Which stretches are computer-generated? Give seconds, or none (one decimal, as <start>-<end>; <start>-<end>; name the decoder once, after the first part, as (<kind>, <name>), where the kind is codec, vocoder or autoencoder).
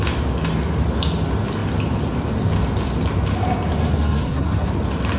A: 3.8-4.7 (codec, SNAC)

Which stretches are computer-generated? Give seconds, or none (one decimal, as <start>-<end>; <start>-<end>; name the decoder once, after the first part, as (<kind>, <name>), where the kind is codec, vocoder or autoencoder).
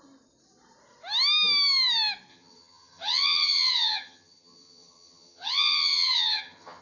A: 2.3-6.8 (vocoder, HiFi-GAN)